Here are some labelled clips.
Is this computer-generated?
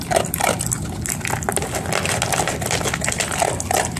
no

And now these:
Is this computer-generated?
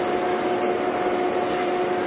no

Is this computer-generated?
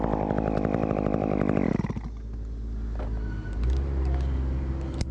no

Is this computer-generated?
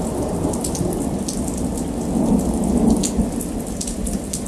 no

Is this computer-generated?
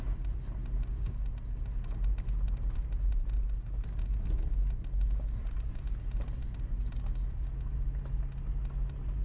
no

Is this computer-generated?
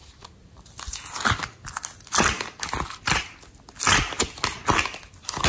no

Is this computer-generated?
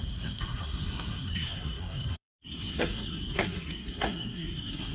yes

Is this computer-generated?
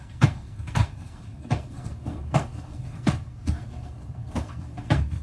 yes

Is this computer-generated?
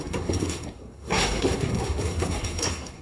yes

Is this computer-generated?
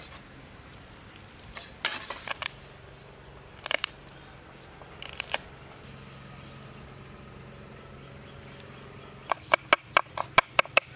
no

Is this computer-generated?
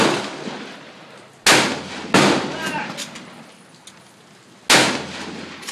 no